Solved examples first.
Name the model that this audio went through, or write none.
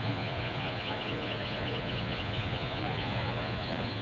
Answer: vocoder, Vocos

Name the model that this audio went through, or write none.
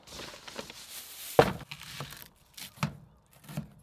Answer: none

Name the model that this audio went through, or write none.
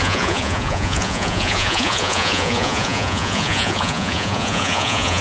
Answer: vocoder, Vocos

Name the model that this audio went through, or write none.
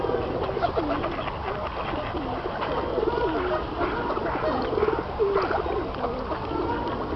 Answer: none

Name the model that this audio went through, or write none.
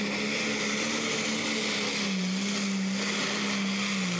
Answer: none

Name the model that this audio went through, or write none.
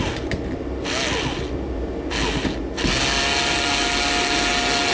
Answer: none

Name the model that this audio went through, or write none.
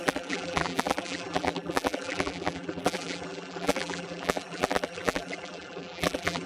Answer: vocoder, BigVGAN v2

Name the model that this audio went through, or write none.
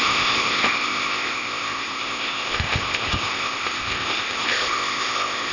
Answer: codec, ZipCodec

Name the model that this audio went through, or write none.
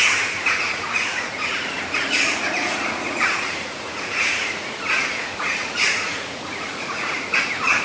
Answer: vocoder, Vocos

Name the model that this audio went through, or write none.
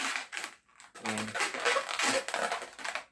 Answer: none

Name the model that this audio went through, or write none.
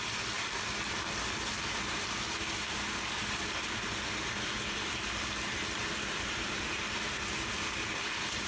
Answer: none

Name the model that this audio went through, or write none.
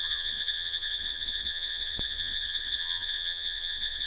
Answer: vocoder, Vocos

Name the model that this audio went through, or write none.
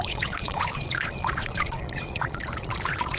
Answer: vocoder, Vocos